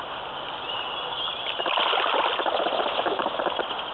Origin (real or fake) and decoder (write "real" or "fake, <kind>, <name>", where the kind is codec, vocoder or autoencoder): real